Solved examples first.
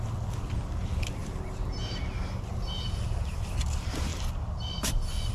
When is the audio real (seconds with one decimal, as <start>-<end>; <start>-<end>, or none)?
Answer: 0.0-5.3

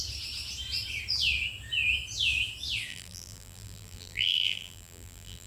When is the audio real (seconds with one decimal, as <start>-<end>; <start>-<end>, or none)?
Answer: 0.0-2.9

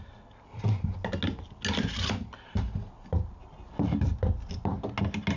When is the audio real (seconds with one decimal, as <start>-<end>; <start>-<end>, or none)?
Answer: 0.0-5.4

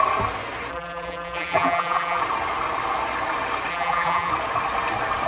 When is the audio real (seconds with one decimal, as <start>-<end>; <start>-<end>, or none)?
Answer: 0.0-0.7; 2.2-3.7; 4.3-5.3

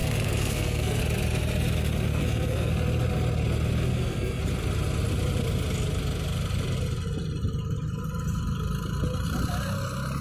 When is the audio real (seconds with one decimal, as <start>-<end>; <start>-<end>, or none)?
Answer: 1.0-2.1; 2.7-3.9; 4.4-10.2

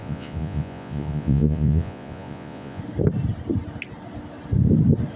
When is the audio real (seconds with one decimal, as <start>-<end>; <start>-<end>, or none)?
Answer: 2.8-5.2

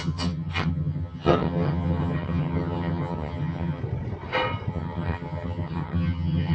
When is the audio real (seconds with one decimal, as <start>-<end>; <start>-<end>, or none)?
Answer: 3.8-4.7